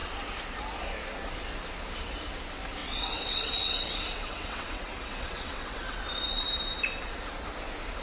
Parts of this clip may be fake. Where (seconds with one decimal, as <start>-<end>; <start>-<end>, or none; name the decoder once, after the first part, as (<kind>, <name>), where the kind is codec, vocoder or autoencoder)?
2.8-6.0 (vocoder, WaveNeXt)